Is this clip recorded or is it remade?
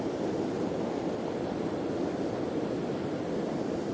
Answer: recorded